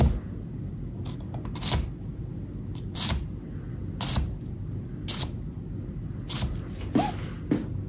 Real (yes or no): yes